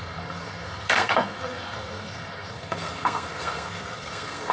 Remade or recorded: remade